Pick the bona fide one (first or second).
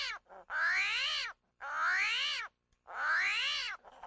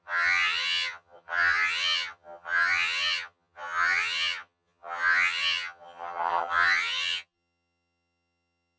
first